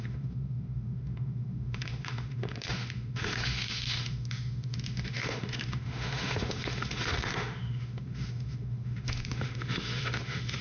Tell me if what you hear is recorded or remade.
remade